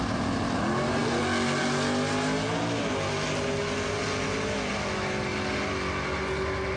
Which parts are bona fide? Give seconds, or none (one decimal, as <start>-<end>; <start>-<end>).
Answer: 0.0-6.8